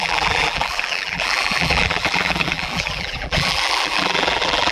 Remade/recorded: remade